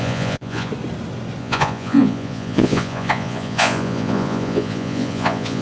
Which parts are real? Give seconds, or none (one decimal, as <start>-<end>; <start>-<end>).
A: 0.7-1.4